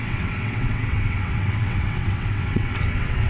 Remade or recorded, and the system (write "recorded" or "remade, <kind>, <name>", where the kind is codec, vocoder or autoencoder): remade, vocoder, WaveNeXt